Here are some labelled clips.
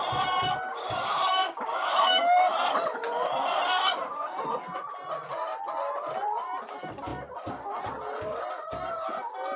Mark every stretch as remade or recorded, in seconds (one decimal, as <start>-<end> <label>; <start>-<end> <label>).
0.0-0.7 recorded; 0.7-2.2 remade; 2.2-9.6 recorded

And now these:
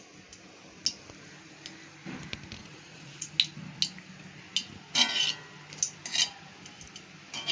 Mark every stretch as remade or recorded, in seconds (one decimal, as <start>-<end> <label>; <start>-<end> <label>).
0.0-2.6 recorded; 2.6-3.3 remade; 3.3-7.5 recorded

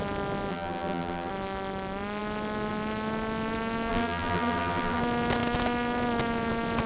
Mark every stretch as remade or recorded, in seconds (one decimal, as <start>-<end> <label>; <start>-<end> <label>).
0.0-0.5 recorded; 0.5-1.3 remade; 1.3-3.9 recorded; 3.9-5.0 remade; 5.0-6.9 recorded

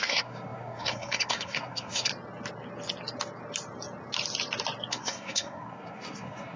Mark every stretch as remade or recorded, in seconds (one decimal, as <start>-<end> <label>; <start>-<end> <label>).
0.0-2.1 remade; 2.1-4.9 recorded; 4.9-6.6 remade

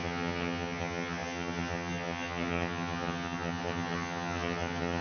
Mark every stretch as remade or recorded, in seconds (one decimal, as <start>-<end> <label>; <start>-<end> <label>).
0.0-5.0 remade

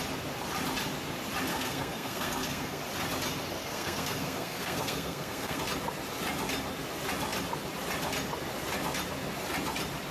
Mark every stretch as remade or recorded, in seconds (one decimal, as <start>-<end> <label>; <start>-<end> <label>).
0.0-1.5 recorded; 1.5-2.8 remade; 2.8-3.6 recorded; 3.6-5.6 remade; 5.6-10.1 recorded